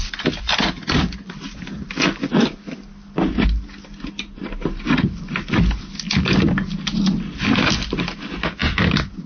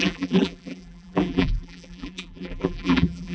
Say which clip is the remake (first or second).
second